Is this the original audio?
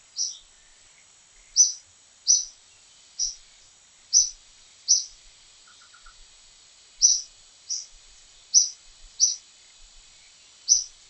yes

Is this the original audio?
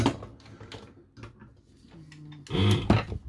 yes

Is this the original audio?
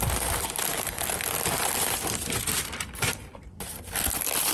yes